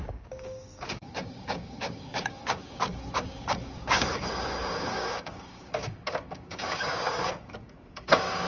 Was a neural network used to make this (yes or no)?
yes